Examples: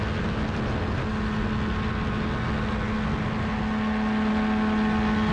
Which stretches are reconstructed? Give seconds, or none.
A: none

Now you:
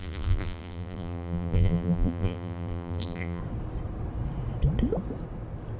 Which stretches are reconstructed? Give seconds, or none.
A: 0.0-3.4 (vocoder, BigVGAN v2)

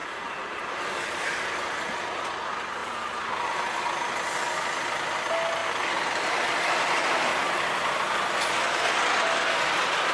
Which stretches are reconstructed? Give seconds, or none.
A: 0.0-0.8 (vocoder, BigVGAN v2); 2.8-3.3; 5.6-7.3

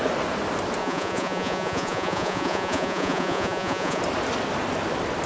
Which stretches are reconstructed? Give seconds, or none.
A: 0.8-4.0 (vocoder, Vocos)